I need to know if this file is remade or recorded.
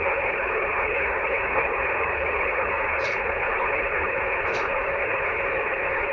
remade